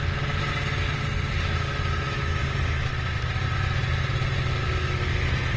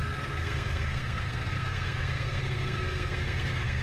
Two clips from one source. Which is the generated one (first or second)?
second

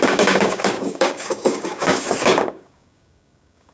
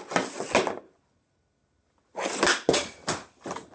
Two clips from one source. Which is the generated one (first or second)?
first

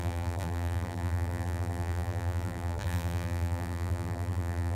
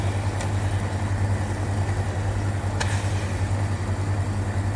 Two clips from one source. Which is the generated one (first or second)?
first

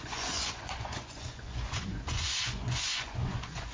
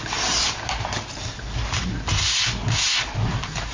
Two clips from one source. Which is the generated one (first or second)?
first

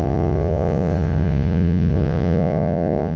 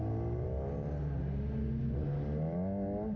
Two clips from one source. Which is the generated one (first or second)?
first